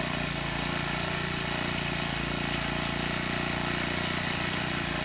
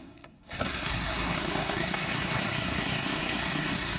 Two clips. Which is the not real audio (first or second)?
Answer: second